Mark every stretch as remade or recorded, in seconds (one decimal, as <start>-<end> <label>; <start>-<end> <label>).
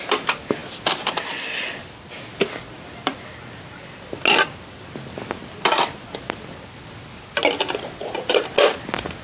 0.0-9.2 recorded